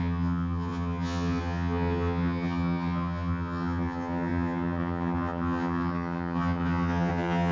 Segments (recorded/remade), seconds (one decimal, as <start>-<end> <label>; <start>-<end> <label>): 0.0-7.5 remade